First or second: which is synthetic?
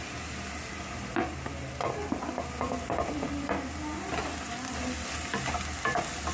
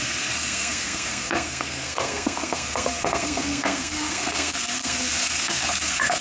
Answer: second